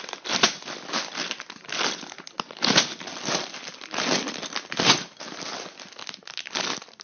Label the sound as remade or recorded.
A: recorded